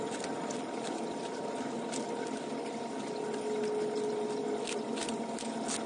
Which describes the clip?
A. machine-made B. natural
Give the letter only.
B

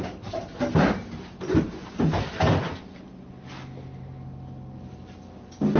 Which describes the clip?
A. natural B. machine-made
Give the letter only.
A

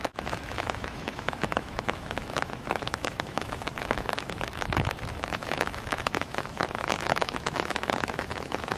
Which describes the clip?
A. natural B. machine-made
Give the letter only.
B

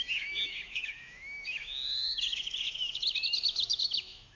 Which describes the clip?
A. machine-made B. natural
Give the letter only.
A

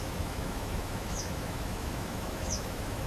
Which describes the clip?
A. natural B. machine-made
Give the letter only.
B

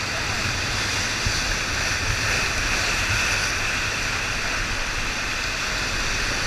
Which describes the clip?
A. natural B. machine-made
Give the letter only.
A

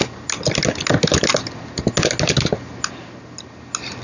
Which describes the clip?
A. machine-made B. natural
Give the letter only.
B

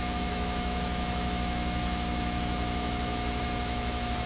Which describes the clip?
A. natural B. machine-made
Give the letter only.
B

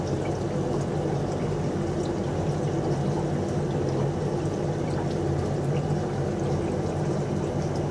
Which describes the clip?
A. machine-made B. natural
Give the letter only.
B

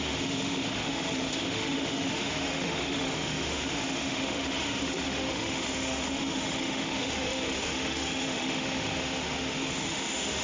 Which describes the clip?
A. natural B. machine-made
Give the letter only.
B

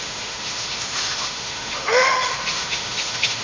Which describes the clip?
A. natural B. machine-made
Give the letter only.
B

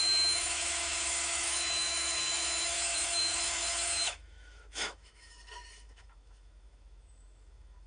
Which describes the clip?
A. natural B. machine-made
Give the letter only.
B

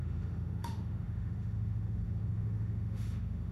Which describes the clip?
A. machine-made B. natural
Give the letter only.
A